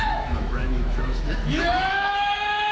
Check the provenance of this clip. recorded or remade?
remade